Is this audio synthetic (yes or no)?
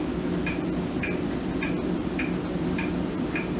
no